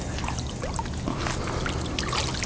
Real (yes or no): yes